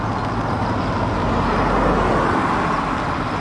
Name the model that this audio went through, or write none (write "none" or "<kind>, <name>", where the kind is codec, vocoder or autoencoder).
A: none